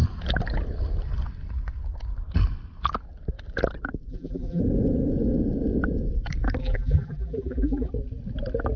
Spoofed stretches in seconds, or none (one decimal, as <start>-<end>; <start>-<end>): 4.1-4.6; 6.6-7.9